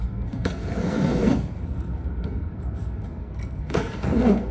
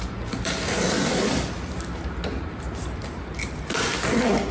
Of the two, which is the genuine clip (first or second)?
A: second